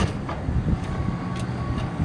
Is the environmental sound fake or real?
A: fake